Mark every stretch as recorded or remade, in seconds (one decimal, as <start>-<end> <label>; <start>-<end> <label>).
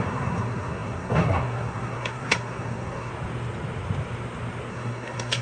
0.0-3.1 remade; 3.1-4.7 recorded; 4.7-5.4 remade